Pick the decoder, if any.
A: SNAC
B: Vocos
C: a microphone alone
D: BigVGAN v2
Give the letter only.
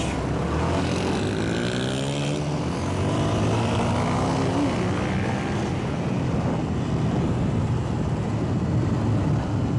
C